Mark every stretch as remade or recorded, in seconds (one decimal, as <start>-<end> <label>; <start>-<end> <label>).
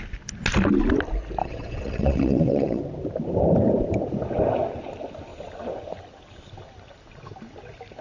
0.0-1.4 recorded; 1.4-2.8 remade; 2.8-8.0 recorded